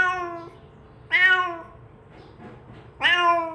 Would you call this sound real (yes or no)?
yes